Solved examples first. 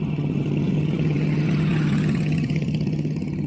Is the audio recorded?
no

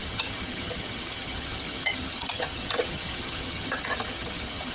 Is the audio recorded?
no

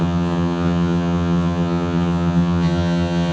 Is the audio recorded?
no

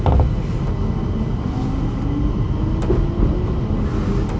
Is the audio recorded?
yes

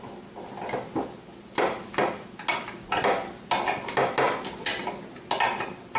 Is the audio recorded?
yes